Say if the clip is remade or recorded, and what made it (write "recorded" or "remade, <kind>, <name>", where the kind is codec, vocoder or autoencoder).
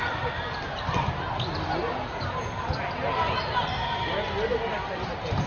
recorded